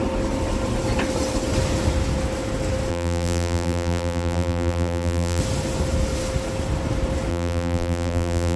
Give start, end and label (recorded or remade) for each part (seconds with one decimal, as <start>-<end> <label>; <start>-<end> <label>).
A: 0.0-2.9 recorded; 2.9-5.4 remade; 5.4-7.3 recorded; 7.3-8.6 remade

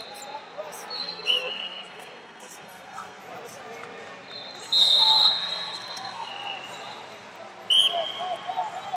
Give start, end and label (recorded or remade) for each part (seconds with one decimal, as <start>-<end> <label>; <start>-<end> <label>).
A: 0.0-1.0 recorded; 1.0-3.2 remade; 3.2-4.8 recorded; 4.8-6.3 remade; 6.3-9.0 recorded

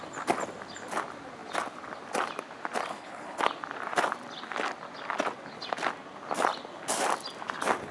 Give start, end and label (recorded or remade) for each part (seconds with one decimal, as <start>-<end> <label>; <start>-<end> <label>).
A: 0.0-2.9 recorded; 2.9-3.4 remade; 3.4-7.9 recorded

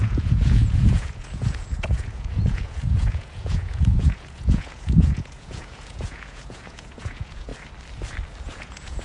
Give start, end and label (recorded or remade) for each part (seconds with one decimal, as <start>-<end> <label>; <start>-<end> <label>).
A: 0.0-7.5 remade; 7.5-8.4 recorded; 8.4-9.0 remade

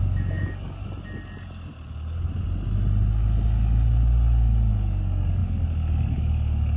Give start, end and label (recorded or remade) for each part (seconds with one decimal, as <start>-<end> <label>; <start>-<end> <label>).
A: 0.0-0.8 remade; 0.8-4.7 recorded; 4.7-6.8 remade

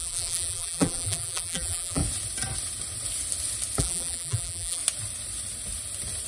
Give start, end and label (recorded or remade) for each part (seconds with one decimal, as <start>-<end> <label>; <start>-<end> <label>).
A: 0.0-2.0 remade; 2.0-3.8 recorded; 3.8-4.8 remade; 4.8-6.3 recorded

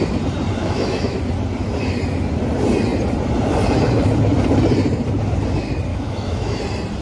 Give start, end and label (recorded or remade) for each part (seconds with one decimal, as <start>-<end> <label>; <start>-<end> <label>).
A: 0.0-0.6 recorded; 0.6-1.2 remade; 1.2-5.9 recorded; 5.9-6.6 remade; 6.6-7.0 recorded